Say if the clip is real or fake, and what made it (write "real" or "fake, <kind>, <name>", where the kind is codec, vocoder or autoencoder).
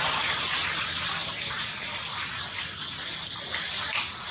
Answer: real